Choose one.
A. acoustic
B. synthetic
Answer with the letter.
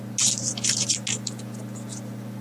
A